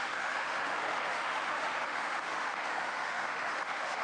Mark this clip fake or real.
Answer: fake